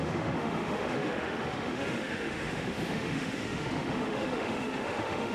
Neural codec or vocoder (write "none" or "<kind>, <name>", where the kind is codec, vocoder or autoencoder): autoencoder, DAC-VAE